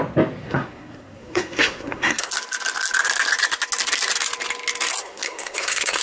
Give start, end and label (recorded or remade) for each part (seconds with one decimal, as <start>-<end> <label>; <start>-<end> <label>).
0.0-0.4 recorded; 0.4-2.3 remade; 2.3-5.0 recorded; 5.0-6.0 remade